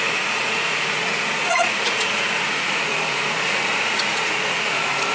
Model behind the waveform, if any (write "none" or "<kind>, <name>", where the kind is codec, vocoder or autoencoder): vocoder, Vocos